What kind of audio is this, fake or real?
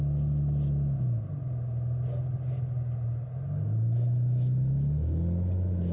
real